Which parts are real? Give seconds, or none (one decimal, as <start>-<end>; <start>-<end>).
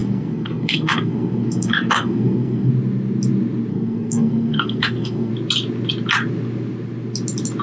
2.7-3.7; 5.3-7.6